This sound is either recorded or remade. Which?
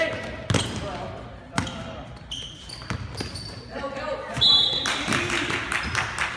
recorded